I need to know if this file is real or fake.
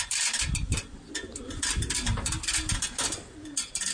real